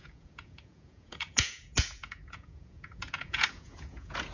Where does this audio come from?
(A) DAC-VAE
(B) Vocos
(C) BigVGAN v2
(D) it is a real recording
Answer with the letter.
B